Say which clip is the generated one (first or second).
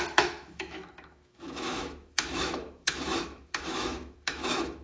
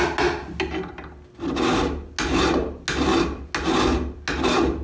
first